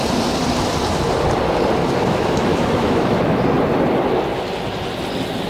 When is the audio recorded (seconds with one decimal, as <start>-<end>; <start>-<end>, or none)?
0.0-1.8; 3.4-5.5